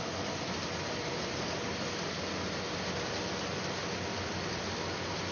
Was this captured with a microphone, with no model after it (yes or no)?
yes